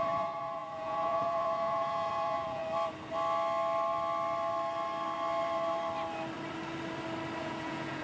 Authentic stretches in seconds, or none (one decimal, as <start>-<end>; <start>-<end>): 2.6-7.4